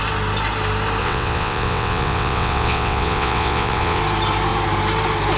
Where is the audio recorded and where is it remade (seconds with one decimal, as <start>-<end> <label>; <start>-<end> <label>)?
0.0-1.0 recorded; 1.0-4.0 remade; 4.0-5.4 recorded